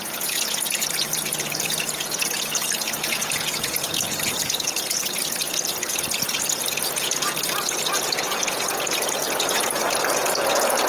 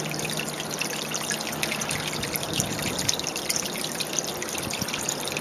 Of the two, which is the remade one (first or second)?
first